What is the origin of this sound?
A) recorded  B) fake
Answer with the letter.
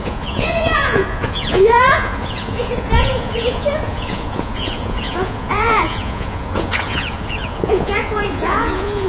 B